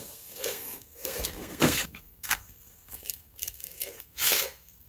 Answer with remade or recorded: remade